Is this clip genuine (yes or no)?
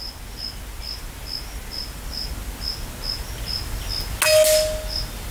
yes